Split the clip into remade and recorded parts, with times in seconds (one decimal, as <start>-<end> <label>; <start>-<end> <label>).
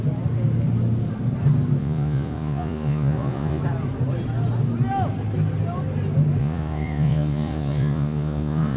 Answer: 0.0-1.8 recorded; 1.8-3.6 remade; 3.6-6.4 recorded; 6.4-8.8 remade